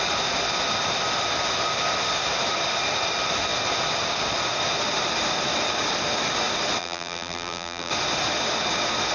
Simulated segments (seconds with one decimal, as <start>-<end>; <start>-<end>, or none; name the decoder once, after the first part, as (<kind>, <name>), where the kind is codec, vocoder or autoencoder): 6.8-7.9 (vocoder, BigVGAN v2)